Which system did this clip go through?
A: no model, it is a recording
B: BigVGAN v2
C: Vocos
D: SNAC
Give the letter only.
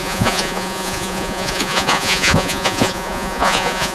C